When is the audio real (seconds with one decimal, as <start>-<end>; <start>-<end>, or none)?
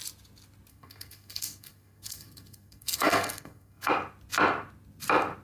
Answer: 0.0-0.7; 3.9-5.4